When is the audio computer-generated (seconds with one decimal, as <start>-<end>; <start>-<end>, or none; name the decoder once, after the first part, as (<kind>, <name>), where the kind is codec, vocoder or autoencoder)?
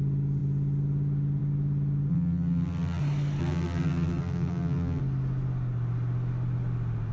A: 2.1-3.0 (vocoder, BigVGAN v2); 3.4-5.0